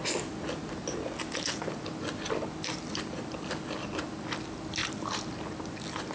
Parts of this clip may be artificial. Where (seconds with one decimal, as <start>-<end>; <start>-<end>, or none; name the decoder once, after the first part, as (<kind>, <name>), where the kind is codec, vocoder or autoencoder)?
none